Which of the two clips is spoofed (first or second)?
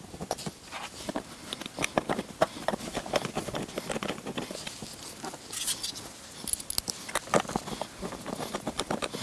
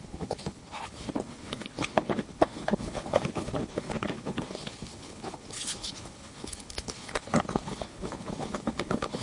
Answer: second